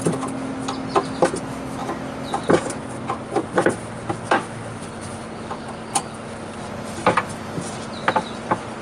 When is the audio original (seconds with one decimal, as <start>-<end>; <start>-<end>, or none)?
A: 0.0-8.8